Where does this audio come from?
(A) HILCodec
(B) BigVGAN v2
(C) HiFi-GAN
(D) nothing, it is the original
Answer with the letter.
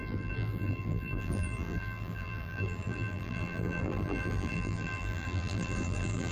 B